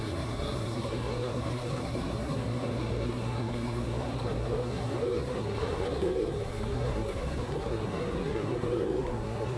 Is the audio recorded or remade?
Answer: remade